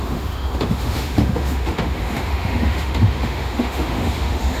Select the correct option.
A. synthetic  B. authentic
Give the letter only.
A